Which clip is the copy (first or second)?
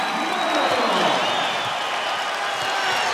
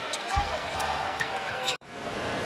second